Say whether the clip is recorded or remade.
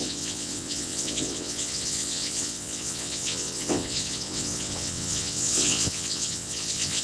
remade